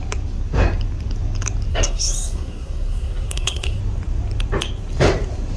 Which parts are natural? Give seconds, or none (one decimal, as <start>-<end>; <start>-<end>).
0.0-1.7; 3.8-5.6